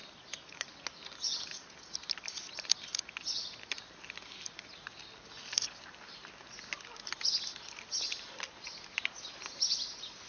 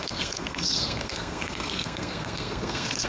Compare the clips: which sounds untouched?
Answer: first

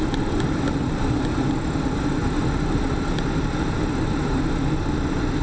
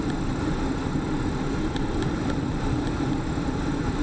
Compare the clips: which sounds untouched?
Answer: first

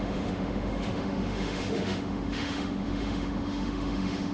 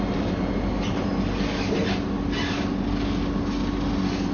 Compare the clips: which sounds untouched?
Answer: second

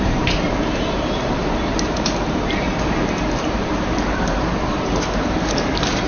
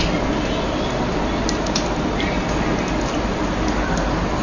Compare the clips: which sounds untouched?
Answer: second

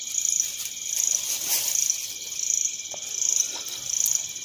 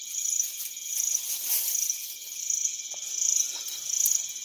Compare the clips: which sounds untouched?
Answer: first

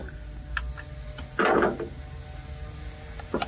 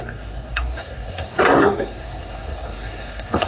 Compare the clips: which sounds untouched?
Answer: first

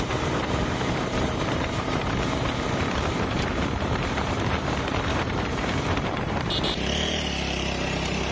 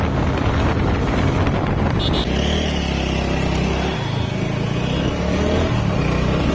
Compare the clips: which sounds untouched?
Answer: second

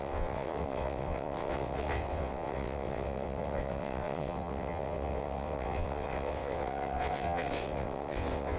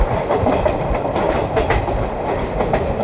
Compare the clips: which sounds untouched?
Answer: second